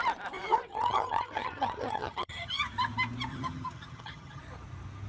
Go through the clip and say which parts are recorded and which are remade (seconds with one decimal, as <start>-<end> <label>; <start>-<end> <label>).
0.0-0.7 recorded; 0.7-2.6 remade; 2.6-3.3 recorded; 3.3-4.4 remade; 4.4-5.1 recorded